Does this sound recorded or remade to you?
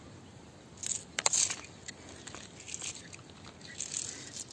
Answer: recorded